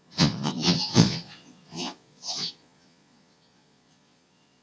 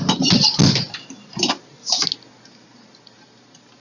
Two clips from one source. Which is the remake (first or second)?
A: first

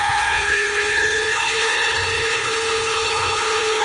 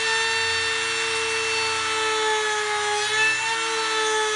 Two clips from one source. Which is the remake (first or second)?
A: first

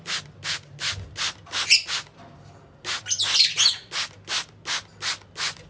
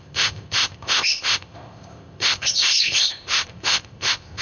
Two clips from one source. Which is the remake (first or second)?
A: second